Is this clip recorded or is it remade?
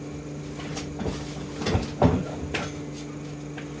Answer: recorded